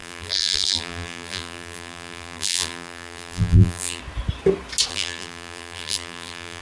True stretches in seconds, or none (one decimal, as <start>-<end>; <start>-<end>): 4.0-4.9